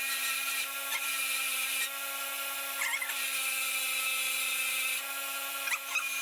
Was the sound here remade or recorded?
remade